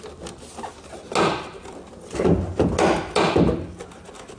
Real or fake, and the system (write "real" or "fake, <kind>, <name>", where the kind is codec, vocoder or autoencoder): real